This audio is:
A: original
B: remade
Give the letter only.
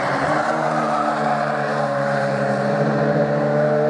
B